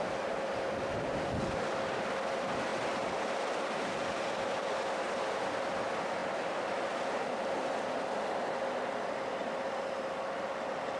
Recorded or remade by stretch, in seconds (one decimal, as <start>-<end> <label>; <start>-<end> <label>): 0.0-11.0 recorded